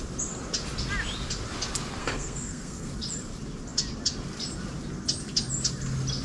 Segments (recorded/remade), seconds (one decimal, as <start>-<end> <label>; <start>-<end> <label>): 0.0-2.0 recorded; 2.0-2.9 remade; 2.9-6.2 recorded